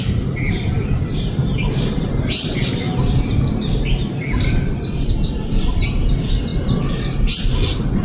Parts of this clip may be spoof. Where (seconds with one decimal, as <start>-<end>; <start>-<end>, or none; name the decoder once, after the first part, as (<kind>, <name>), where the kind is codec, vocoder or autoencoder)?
none